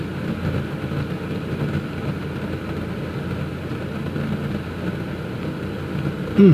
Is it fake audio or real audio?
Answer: real